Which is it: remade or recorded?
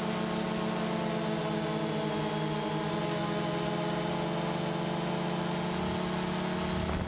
recorded